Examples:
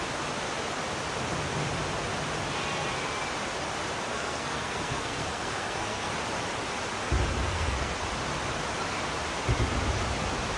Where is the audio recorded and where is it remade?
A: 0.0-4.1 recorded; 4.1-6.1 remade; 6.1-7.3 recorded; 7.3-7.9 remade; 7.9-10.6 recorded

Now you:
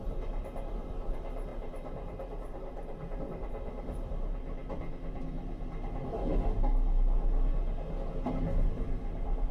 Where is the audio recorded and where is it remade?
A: 0.0-1.5 recorded; 1.5-3.2 remade; 3.2-9.5 recorded

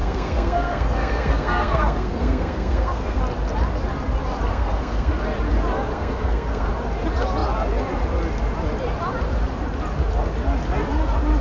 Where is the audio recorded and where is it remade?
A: 0.0-3.2 remade; 3.2-4.5 recorded; 4.5-5.1 remade; 5.1-5.9 recorded; 5.9-6.7 remade; 6.7-11.4 recorded

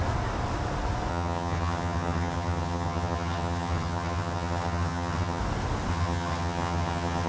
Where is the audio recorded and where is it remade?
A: 0.0-1.1 recorded; 1.1-5.4 remade; 5.4-5.9 recorded; 5.9-7.3 remade